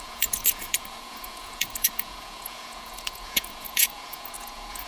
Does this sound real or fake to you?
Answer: fake